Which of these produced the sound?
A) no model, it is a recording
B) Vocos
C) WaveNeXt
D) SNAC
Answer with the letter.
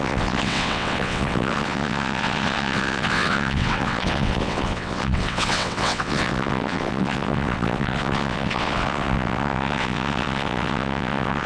C